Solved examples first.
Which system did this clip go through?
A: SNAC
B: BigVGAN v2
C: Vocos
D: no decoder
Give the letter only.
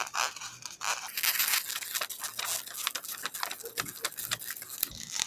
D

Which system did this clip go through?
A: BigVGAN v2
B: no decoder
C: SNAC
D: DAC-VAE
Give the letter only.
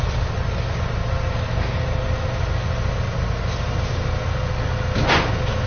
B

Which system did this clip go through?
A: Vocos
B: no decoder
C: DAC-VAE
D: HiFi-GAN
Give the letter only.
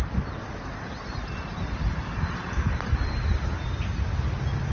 B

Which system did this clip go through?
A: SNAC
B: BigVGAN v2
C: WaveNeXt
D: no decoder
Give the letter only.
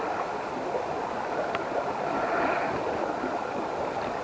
D